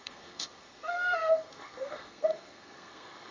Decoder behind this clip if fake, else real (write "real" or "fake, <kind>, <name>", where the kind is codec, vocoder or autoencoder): fake, codec, SNAC